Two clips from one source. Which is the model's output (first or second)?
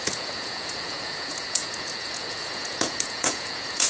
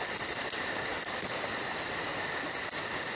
first